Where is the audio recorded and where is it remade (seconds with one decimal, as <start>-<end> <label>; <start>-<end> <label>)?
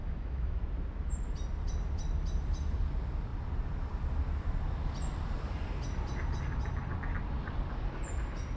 0.0-0.6 remade; 0.6-8.6 recorded